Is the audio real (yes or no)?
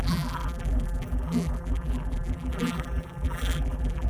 no